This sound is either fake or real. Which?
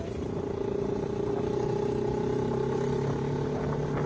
real